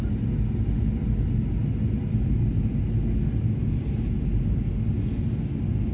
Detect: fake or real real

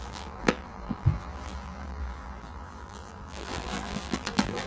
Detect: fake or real fake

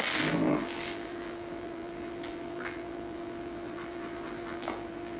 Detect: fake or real fake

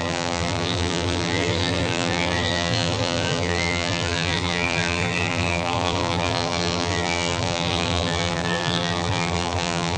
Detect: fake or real fake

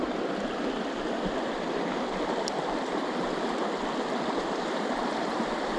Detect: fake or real real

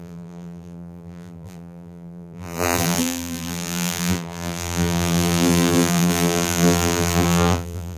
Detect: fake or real fake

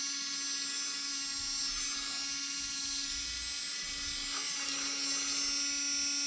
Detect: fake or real real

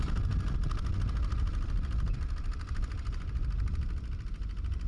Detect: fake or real real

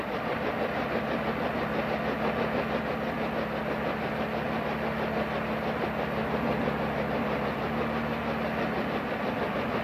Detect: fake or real real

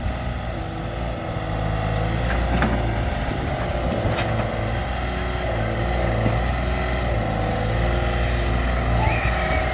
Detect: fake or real real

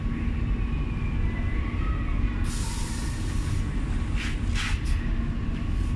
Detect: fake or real real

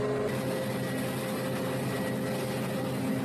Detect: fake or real real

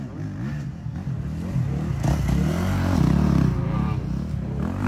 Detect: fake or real real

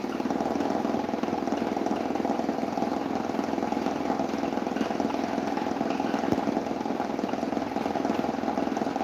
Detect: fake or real real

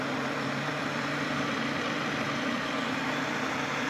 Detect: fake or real fake